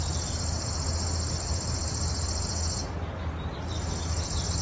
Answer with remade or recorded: recorded